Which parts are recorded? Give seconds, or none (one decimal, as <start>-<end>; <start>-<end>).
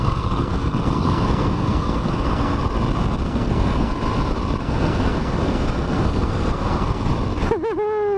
2.6-3.2; 3.9-4.6; 7.1-8.2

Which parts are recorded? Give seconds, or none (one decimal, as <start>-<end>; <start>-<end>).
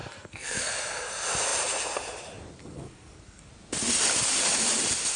0.7-2.6; 3.5-5.2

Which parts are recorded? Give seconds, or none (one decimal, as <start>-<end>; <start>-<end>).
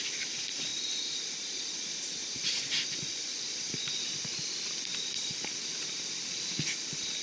0.0-7.2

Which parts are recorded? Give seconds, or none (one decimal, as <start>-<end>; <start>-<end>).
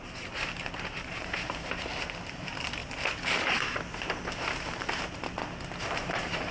2.8-5.8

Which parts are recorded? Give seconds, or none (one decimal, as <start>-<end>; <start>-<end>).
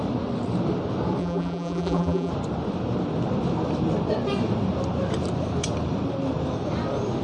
0.0-1.2; 2.3-7.2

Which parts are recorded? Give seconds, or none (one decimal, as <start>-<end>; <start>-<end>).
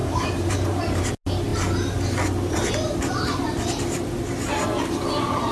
1.0-5.5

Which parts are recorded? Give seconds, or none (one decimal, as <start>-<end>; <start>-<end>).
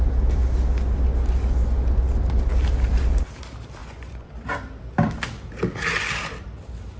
0.0-3.8; 4.3-7.0